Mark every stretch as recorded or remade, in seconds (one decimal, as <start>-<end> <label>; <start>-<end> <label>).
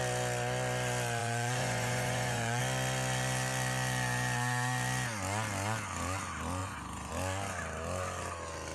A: 0.0-1.2 recorded; 1.2-2.6 remade; 2.6-6.6 recorded; 6.6-7.1 remade; 7.1-8.7 recorded